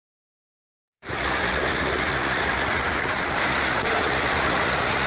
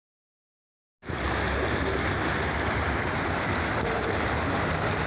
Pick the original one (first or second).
second